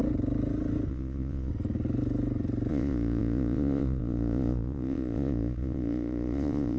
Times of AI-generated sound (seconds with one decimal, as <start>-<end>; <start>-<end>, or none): 0.9-1.5; 2.7-6.8